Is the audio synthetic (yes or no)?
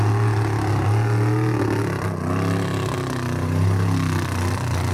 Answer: no